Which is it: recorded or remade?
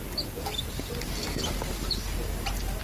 recorded